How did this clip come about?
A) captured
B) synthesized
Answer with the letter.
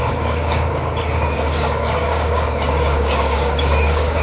B